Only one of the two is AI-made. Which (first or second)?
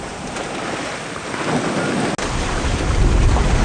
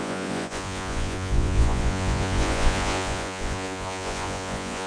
second